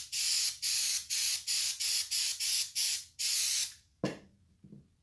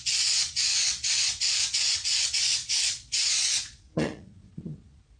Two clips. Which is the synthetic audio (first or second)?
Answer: second